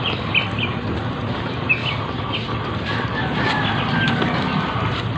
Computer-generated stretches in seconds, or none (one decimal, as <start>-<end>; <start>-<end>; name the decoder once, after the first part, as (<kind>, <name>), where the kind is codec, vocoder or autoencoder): none